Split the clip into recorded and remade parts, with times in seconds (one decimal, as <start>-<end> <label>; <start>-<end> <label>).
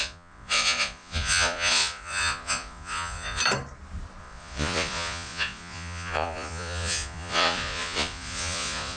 0.0-3.4 remade; 3.4-4.2 recorded; 4.2-9.0 remade